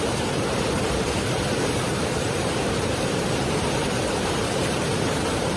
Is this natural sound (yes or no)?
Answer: no